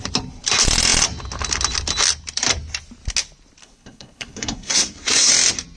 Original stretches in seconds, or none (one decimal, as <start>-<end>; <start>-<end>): 0.0-3.6; 5.3-5.8